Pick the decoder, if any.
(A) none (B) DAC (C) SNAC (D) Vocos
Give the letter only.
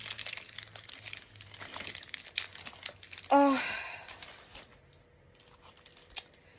A